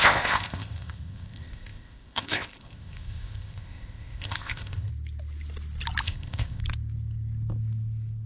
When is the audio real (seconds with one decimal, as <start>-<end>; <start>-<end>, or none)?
4.9-6.0; 6.6-8.3